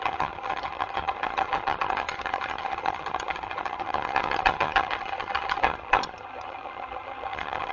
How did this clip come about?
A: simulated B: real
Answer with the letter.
A